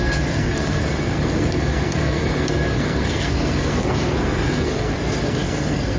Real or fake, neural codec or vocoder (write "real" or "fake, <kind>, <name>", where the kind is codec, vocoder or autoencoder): fake, codec, SNAC